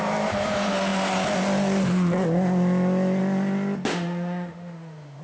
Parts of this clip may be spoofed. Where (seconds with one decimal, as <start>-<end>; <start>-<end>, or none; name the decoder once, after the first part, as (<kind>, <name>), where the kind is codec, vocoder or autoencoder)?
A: 3.9-5.2 (autoencoder, DAC-VAE)